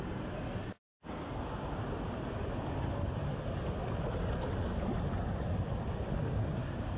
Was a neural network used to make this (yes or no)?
no